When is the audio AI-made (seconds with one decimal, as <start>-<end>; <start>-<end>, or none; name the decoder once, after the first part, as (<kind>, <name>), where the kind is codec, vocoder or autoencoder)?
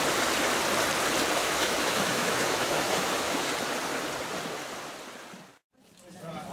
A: 1.4-3.5 (autoencoder, DAC-VAE)